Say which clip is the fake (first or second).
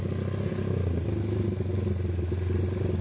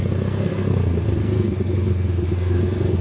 second